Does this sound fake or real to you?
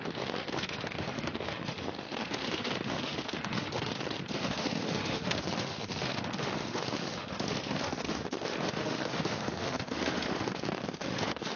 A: fake